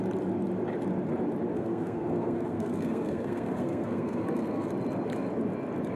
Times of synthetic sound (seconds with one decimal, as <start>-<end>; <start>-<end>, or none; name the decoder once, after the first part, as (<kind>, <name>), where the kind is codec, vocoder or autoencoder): 1.5-4.7 (codec, SNAC)